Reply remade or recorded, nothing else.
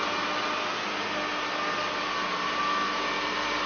recorded